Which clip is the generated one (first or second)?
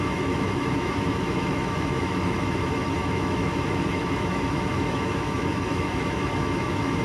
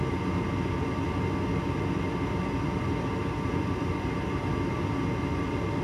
first